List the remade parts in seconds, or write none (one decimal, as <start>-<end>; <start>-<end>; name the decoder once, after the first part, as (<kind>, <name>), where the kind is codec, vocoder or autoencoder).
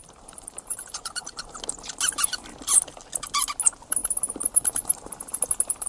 0.0-1.4 (vocoder, BigVGAN v2); 4.0-5.1